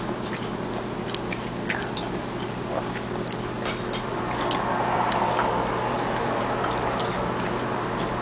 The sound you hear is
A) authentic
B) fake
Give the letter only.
A